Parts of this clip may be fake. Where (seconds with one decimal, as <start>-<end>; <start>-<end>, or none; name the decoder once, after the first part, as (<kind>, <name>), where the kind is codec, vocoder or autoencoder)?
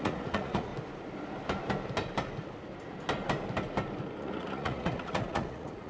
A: 0.0-0.7 (vocoder, Vocos); 4.2-5.9